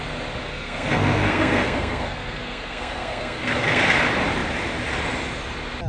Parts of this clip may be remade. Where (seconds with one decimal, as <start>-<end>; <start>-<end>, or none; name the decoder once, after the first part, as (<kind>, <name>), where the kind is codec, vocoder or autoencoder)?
0.4-3.9 (codec, SNAC)